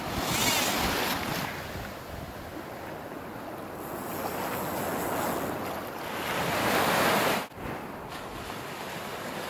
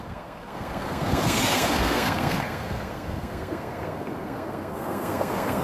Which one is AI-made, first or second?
second